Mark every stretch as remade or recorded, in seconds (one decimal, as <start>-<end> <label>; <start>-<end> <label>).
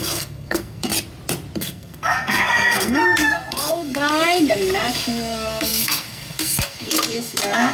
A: 0.0-0.9 remade; 0.9-1.6 recorded; 1.6-7.7 remade